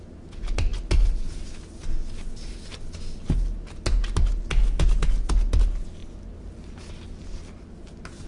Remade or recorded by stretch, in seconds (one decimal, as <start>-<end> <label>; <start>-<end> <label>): 0.0-8.3 recorded